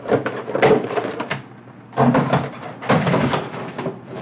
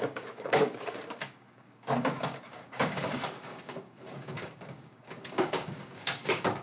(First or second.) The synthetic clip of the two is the second